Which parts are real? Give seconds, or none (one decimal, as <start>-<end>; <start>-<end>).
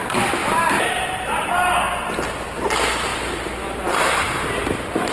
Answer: 0.0-5.1